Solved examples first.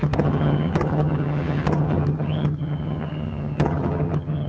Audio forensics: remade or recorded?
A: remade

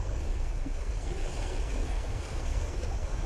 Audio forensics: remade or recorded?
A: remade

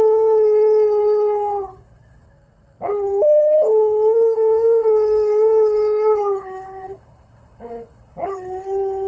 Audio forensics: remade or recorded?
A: remade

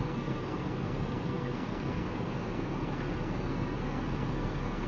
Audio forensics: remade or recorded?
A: remade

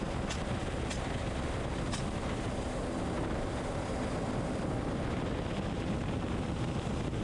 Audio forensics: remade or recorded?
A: recorded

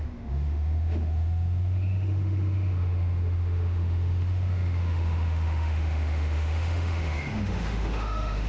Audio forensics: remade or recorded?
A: remade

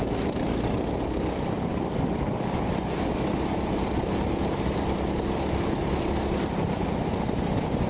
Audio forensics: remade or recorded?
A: remade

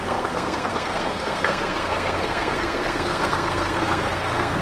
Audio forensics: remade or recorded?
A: remade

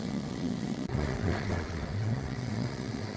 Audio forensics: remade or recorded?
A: remade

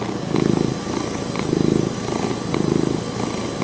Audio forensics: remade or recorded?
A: recorded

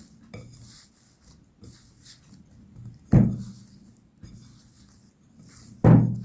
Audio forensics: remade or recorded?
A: recorded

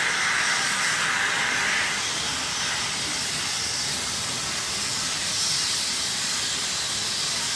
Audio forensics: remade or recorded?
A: recorded